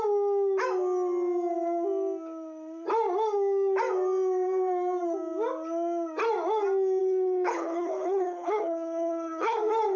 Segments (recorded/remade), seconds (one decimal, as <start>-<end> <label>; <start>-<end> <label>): 0.0-7.0 recorded; 7.0-9.6 remade; 9.6-10.0 recorded